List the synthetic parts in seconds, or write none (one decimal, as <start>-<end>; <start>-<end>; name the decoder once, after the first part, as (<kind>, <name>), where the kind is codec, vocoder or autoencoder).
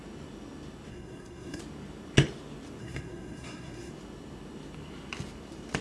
0.9-1.6 (codec, SNAC); 2.8-3.9